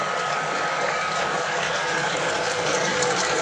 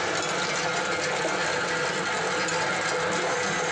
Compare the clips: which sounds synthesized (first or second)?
first